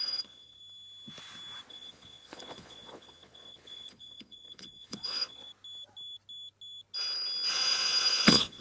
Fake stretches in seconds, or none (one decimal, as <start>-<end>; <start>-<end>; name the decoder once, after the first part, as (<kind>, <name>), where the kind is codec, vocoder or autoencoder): 0.0-0.6 (vocoder, Vocos); 1.7-5.5; 7.5-8.6